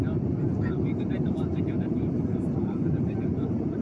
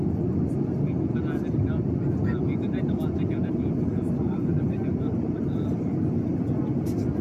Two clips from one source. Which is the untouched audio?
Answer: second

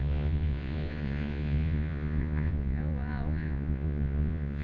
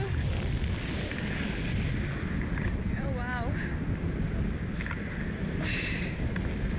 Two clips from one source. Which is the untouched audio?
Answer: second